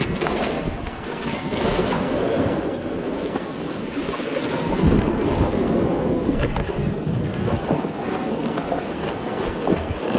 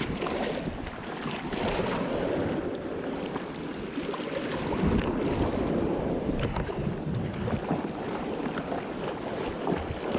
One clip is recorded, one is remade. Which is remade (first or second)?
first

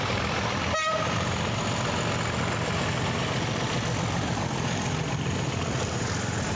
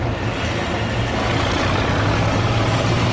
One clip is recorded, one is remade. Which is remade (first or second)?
first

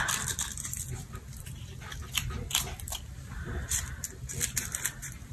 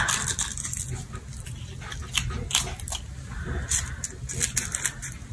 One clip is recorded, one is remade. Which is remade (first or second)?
first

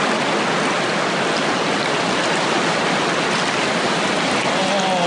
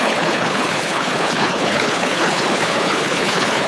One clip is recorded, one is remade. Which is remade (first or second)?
second